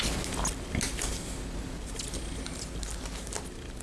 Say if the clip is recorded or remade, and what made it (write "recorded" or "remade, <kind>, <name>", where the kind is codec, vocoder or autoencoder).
recorded